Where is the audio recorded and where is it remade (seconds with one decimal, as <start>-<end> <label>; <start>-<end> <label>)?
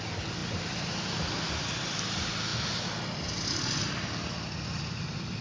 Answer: 0.0-5.4 recorded